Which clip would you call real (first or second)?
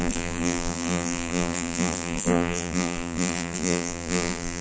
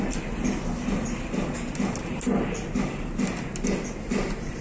second